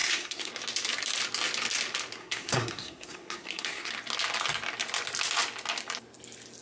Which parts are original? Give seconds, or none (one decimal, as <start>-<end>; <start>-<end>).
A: 0.5-2.2; 3.9-6.6